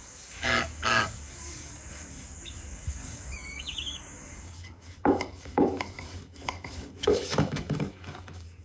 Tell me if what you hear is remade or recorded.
remade